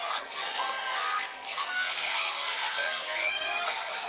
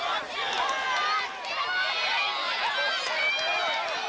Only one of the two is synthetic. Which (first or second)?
first